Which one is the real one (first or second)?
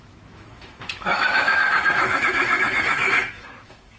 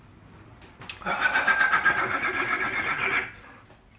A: second